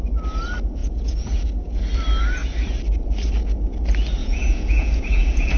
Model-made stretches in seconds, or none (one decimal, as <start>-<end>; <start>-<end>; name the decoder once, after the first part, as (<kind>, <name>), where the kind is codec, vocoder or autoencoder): 0.8-1.8 (vocoder, Vocos); 4.2-5.6

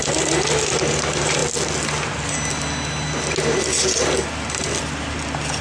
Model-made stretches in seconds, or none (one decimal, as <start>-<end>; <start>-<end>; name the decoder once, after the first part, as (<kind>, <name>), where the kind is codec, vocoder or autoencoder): none